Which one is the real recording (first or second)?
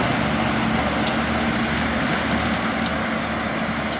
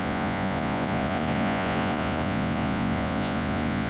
first